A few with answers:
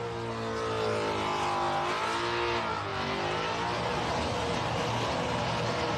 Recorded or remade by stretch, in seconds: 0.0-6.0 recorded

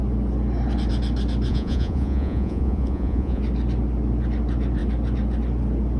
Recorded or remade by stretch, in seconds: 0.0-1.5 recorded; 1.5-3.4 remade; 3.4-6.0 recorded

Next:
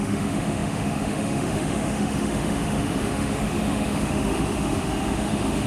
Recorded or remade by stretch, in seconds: 0.0-5.7 remade

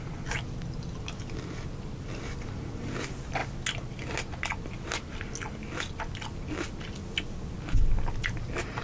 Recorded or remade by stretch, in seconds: 0.0-8.8 recorded

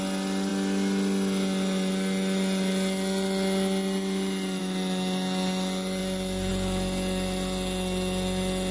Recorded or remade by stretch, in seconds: 0.0-8.7 recorded

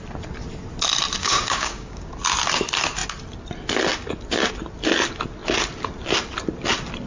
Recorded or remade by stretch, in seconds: 0.0-1.2 recorded; 1.2-2.1 remade; 2.1-7.1 recorded

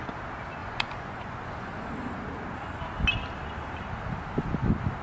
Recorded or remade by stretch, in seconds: 0.0-0.6 recorded; 0.6-1.9 remade; 1.9-5.0 recorded